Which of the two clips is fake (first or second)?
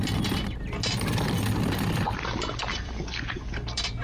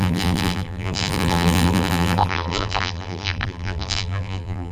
second